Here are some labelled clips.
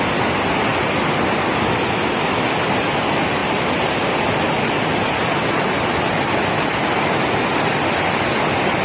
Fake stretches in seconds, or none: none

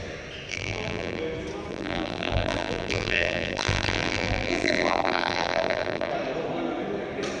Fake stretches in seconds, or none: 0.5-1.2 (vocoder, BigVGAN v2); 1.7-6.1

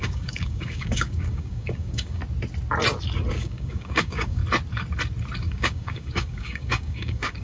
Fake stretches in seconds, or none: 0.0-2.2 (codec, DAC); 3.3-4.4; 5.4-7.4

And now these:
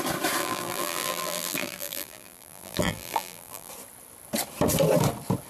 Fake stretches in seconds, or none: 0.4-3.7 (vocoder, BigVGAN v2)